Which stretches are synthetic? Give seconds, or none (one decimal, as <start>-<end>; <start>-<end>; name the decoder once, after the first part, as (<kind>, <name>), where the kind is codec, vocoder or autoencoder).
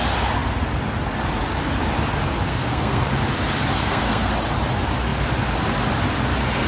2.5-3.1 (codec, SNAC); 3.8-4.3